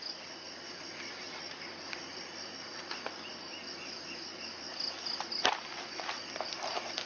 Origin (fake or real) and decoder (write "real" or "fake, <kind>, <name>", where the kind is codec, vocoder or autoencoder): real